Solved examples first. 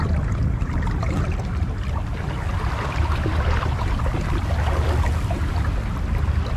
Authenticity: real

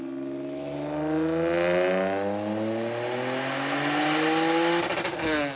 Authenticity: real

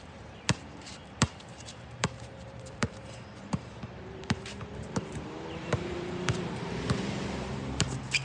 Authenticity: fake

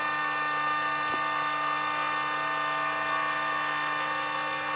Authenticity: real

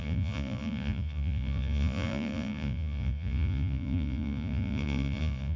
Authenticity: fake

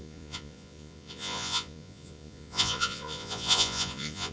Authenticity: fake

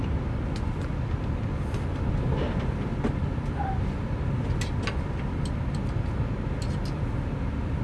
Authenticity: real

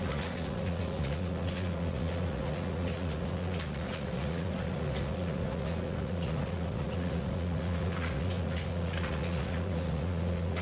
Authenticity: fake